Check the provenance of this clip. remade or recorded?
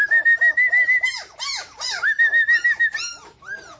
recorded